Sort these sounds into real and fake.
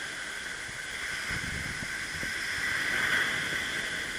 real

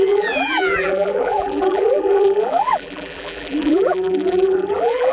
fake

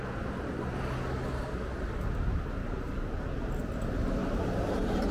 real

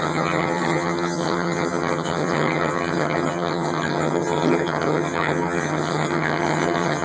fake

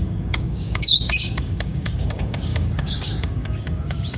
fake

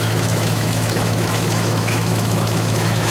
fake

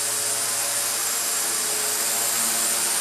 real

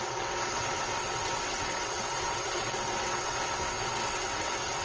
fake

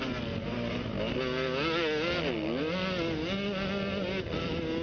real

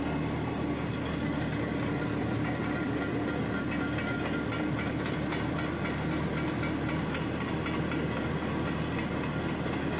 real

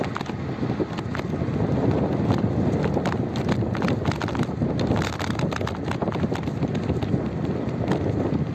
real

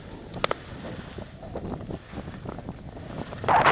real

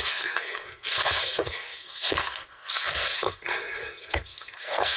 fake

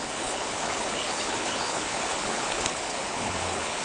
fake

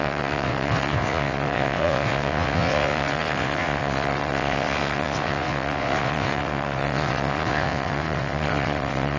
fake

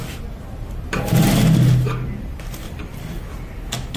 real